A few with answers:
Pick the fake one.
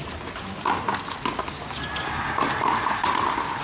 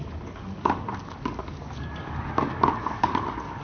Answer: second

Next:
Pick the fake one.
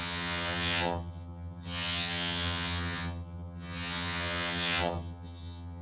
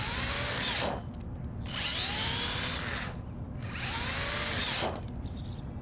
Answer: first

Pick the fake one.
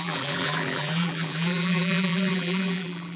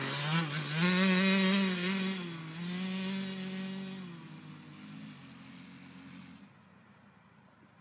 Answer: first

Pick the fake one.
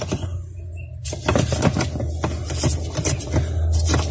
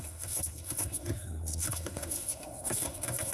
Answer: second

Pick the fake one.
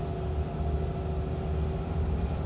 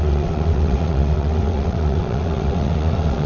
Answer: second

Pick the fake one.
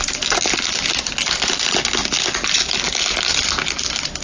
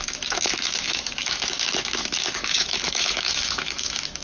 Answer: second